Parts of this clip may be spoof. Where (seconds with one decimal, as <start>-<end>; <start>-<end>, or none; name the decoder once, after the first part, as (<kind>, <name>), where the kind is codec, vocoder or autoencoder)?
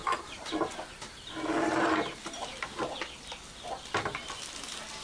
0.0-2.8 (vocoder, BigVGAN v2)